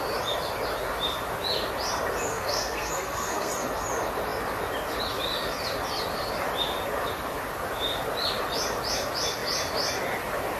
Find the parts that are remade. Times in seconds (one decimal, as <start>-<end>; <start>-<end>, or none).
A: 2.3-3.5